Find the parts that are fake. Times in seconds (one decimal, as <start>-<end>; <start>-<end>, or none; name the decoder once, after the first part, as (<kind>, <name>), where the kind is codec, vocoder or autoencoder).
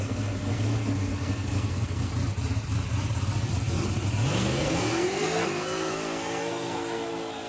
0.0-2.1 (codec, SNAC); 4.3-7.5